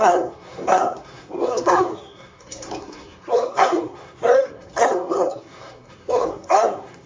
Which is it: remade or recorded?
remade